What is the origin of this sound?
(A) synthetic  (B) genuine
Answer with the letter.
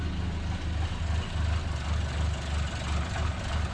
B